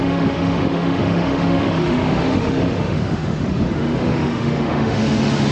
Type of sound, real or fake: fake